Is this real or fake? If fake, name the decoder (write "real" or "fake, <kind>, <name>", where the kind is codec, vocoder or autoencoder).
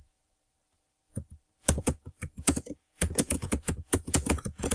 fake, vocoder, Vocos